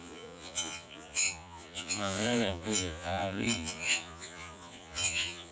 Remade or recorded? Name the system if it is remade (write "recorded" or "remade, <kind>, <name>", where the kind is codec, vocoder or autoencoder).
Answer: remade, vocoder, Vocos